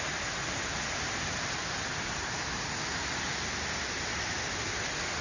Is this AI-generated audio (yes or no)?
no